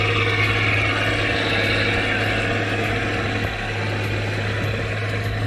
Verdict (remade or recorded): recorded